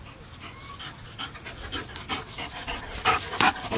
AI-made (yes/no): no